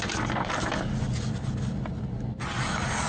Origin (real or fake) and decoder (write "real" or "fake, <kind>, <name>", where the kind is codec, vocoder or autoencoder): real